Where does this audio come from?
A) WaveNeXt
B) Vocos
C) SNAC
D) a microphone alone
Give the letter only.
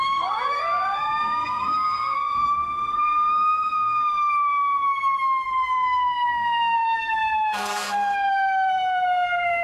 C